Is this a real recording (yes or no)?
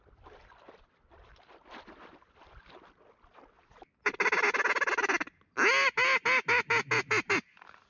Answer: yes